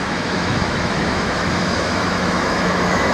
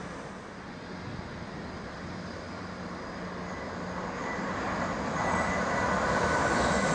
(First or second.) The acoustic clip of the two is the second